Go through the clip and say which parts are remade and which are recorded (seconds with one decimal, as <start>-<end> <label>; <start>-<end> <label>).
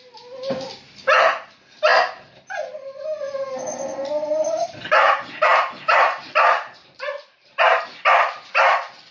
0.0-4.3 recorded; 4.3-6.3 remade; 6.3-6.8 recorded; 6.8-7.8 remade; 7.8-9.1 recorded